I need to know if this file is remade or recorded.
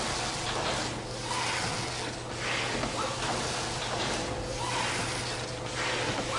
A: recorded